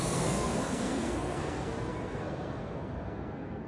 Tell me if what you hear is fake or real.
fake